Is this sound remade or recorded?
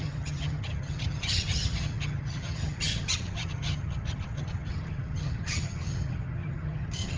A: remade